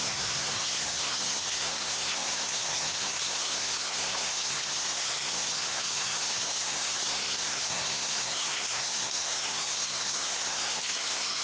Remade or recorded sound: remade